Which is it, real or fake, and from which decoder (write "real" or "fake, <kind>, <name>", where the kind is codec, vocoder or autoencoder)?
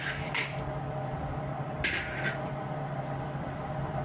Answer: fake, vocoder, BigVGAN v2